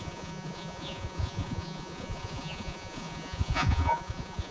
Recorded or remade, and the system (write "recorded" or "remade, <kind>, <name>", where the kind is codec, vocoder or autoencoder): remade, vocoder, Vocos